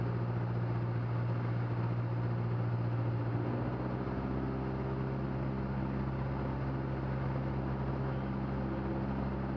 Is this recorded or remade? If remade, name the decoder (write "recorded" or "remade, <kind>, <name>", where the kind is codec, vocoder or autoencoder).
recorded